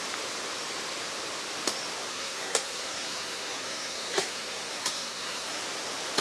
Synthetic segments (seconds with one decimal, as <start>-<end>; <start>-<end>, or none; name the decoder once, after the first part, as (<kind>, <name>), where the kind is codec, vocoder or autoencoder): 2.1-5.6 (codec, SNAC)

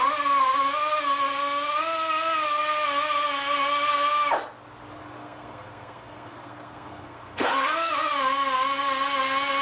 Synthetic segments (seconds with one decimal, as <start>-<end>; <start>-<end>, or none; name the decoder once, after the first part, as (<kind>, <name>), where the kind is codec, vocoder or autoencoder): 5.0-7.9 (codec, SNAC)

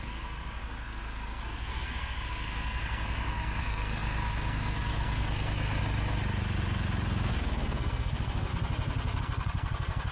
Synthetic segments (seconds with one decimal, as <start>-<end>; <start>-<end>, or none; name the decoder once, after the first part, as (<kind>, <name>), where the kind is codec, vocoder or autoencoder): 0.0-5.8 (codec, SNAC); 7.3-8.5; 9.2-10.1

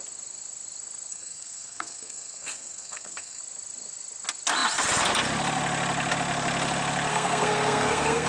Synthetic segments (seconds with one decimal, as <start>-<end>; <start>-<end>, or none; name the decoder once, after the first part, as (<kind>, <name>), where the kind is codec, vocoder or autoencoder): 1.1-3.4 (codec, SNAC); 7.1-8.3

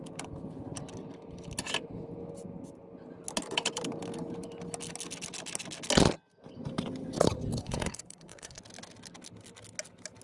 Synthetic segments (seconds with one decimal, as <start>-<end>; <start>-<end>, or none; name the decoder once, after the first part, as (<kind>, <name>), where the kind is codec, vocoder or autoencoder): 7.5-8.6 (codec, SNAC)

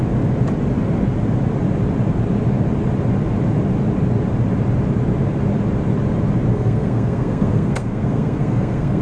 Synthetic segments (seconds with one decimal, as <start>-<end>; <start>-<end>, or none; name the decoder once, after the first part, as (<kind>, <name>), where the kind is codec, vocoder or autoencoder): 6.5-9.0 (codec, SNAC)